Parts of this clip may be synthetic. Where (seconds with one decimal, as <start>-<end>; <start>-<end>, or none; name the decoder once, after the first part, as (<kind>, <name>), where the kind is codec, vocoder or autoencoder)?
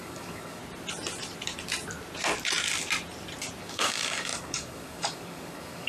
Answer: 0.0-0.6 (codec, DAC); 3.6-5.9